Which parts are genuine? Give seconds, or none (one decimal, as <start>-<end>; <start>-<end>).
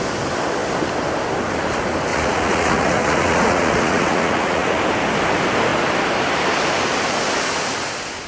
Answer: 0.0-2.1; 4.8-8.3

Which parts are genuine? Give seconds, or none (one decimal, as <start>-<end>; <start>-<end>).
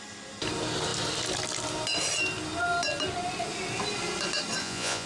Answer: 0.0-4.6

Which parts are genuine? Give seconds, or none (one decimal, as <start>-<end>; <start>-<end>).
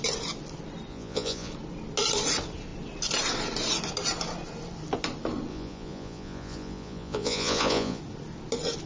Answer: 0.0-0.9; 1.5-5.5; 8.0-8.9